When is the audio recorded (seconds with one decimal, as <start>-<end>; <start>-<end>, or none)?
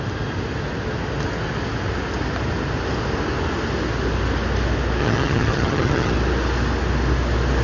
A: 0.0-5.0; 6.1-7.6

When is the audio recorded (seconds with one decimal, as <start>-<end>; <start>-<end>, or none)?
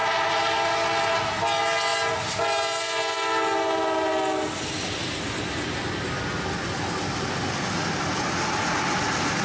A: 0.0-9.4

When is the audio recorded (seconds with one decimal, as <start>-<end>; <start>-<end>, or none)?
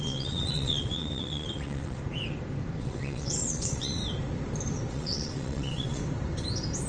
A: 2.0-2.8; 4.0-4.9; 6.0-6.9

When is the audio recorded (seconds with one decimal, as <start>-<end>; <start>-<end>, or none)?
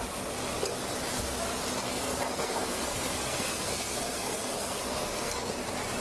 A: 0.0-1.9; 5.5-6.0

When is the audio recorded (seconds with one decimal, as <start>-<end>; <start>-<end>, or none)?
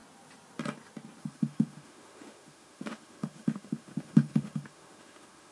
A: 0.0-1.2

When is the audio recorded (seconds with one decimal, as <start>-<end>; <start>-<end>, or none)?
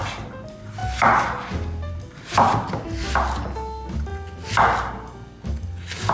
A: 0.0-6.1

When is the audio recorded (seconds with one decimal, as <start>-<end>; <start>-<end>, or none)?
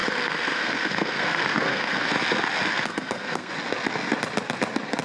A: 2.1-2.7; 3.5-5.0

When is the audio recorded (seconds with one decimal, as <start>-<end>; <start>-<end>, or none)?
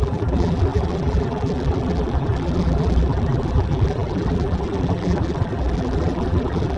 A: none